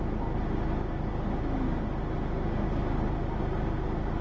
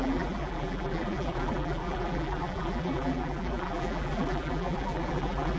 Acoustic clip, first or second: first